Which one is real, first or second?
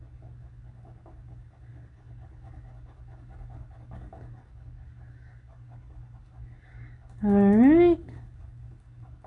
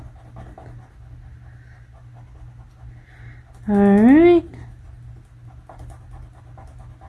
second